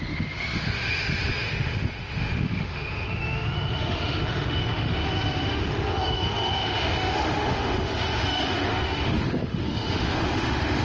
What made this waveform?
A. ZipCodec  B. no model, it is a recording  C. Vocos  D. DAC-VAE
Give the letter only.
D